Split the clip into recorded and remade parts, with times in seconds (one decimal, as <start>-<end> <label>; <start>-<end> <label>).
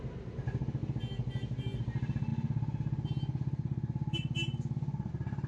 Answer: 0.0-5.5 recorded